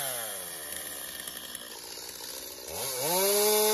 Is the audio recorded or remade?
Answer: recorded